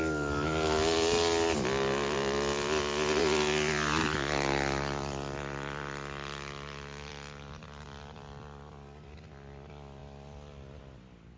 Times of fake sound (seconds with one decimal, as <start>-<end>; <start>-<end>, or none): none